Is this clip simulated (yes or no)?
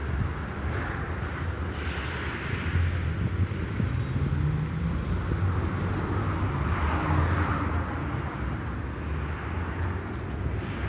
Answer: no